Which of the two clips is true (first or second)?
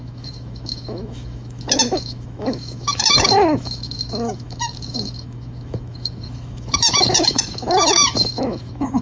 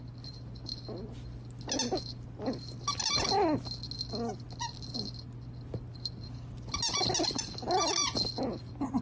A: second